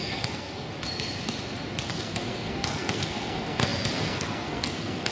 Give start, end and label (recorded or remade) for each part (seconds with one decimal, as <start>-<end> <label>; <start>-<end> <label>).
0.0-0.7 remade; 0.7-1.9 recorded; 1.9-5.1 remade

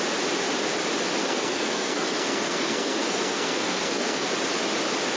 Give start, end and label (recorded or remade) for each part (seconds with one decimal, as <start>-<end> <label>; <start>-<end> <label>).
0.0-1.2 recorded; 1.2-4.3 remade; 4.3-5.2 recorded

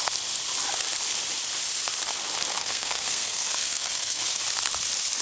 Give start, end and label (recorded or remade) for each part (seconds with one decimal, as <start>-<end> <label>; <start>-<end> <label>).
0.0-2.5 recorded; 2.5-4.4 remade; 4.4-5.2 recorded

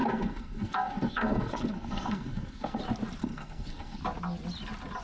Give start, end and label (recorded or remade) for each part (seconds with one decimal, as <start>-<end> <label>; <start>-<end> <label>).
0.0-2.8 remade; 2.8-3.2 recorded; 3.2-4.0 remade; 4.0-5.0 recorded

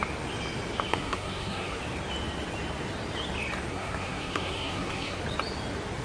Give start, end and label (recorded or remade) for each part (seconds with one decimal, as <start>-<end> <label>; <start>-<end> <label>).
0.0-0.9 recorded; 0.9-1.8 remade; 1.8-3.7 recorded; 3.7-5.2 remade; 5.2-6.0 recorded

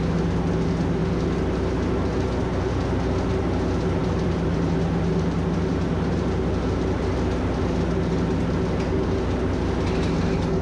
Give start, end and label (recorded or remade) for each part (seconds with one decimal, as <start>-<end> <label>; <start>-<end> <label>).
0.0-10.6 recorded

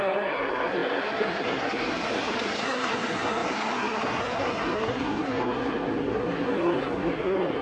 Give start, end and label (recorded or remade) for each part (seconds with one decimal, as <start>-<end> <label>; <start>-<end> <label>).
0.0-7.6 remade

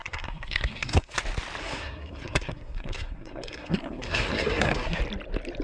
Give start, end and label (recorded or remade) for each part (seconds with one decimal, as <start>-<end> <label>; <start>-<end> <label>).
0.0-1.2 remade; 1.2-1.6 recorded; 1.6-5.0 remade; 5.0-5.6 recorded